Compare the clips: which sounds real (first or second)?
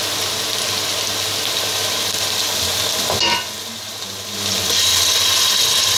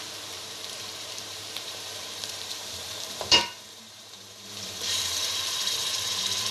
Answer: first